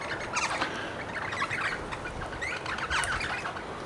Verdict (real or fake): real